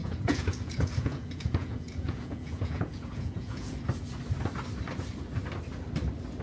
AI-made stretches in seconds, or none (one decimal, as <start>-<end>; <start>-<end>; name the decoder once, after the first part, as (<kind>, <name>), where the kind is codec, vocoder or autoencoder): 0.0-3.8 (vocoder, Vocos)